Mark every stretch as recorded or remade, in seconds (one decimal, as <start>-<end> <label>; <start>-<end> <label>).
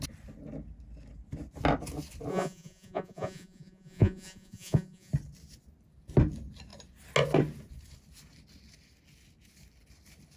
0.0-2.3 recorded; 2.3-5.1 remade; 5.1-10.4 recorded